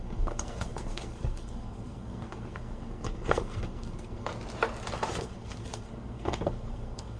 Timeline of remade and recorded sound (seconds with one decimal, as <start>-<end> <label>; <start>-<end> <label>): 0.0-4.3 remade; 4.3-5.2 recorded; 5.2-7.2 remade